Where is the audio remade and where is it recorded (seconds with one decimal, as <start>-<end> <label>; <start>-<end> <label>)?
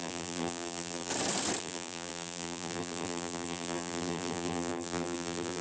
0.0-1.1 remade; 1.1-1.6 recorded; 1.6-5.6 remade